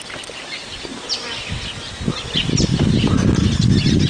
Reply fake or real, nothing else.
real